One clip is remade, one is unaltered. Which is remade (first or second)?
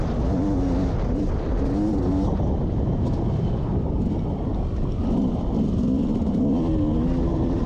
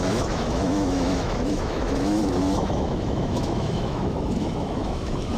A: second